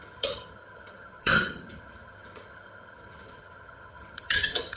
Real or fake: fake